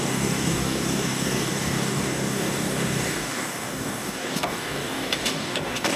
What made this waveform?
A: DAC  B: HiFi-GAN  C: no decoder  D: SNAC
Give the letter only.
A